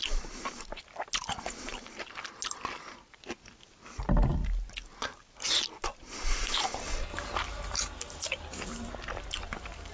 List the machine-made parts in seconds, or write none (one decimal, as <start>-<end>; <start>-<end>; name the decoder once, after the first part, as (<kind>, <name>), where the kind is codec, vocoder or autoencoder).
none